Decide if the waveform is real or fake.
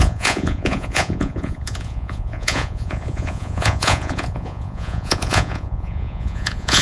fake